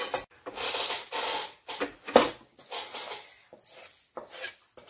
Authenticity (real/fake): real